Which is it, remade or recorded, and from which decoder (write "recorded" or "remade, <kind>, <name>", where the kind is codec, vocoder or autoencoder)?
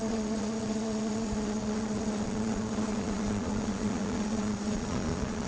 remade, vocoder, Vocos